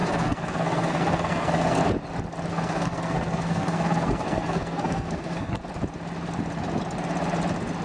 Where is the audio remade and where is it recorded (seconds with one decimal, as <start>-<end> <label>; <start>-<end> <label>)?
0.0-1.8 remade; 1.8-2.5 recorded; 2.5-5.6 remade; 5.6-7.8 recorded